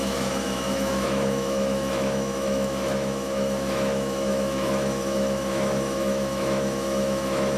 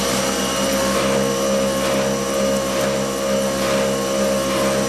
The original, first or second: second